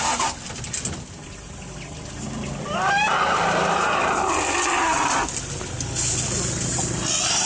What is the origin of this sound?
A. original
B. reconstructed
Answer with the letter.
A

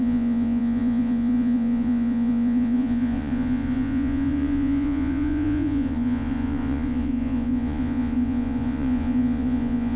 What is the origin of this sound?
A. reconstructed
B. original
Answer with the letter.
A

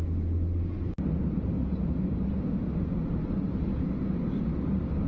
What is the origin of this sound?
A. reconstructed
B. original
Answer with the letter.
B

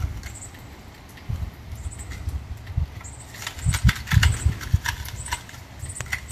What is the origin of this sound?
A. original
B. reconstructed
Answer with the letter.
A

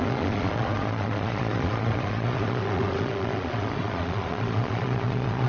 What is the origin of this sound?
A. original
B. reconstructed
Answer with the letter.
B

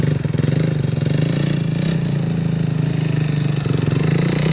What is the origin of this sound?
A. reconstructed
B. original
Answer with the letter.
B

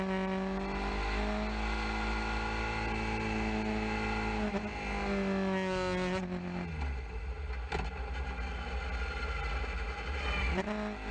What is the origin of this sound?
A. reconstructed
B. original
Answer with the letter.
B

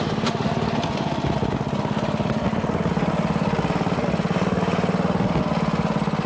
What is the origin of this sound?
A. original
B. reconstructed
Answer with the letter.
A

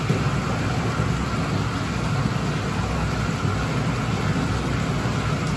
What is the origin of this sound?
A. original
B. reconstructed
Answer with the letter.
A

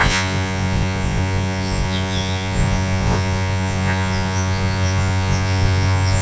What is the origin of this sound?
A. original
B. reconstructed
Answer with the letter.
B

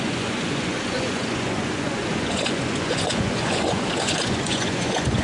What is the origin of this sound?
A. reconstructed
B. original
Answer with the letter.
A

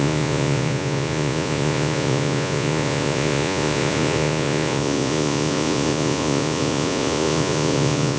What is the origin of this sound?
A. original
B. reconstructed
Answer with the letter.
B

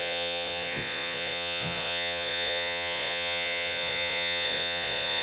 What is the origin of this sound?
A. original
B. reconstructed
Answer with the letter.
B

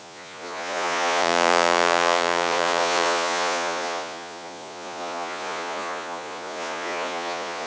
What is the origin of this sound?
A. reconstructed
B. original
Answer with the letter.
A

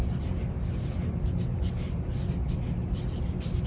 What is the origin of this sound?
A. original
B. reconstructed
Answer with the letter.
A